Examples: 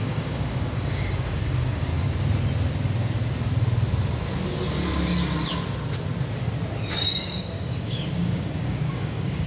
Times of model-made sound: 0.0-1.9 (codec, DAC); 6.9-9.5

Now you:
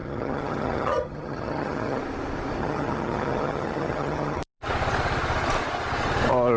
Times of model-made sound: 0.0-2.0 (vocoder, HiFi-GAN); 2.6-4.4